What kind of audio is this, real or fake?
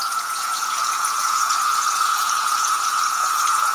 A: fake